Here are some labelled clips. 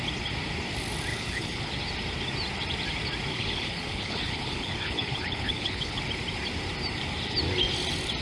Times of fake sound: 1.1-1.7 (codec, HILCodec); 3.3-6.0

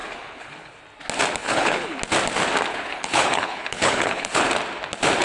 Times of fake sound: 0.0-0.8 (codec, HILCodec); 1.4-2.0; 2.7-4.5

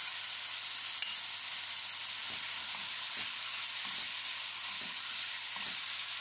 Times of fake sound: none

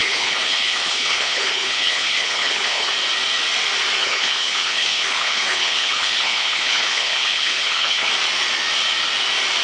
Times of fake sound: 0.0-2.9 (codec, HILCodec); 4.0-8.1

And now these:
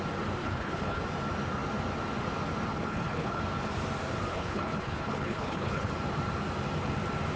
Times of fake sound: 0.4-1.0 (codec, HILCodec); 2.7-3.4; 4.3-5.9

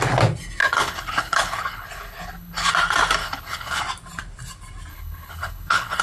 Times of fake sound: 0.6-2.7 (codec, HILCodec); 3.2-3.8; 4.9-6.0

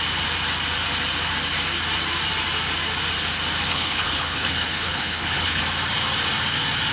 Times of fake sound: 3.7-5.6 (codec, HILCodec)

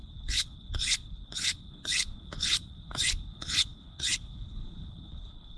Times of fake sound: 0.0-5.6 (codec, HILCodec)